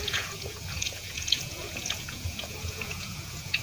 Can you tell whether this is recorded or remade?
remade